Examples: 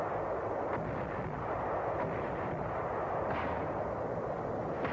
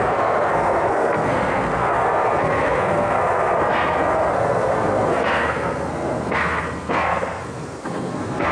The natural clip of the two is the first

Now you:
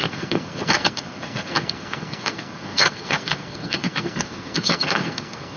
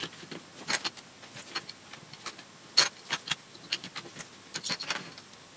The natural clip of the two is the second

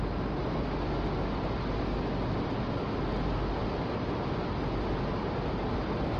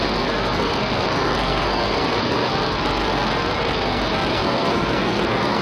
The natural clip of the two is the first